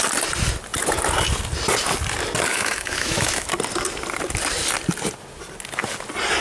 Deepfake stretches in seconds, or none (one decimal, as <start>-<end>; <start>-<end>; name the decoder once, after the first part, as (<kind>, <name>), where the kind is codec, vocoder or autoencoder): 2.5-3.5 (autoencoder, DAC-VAE)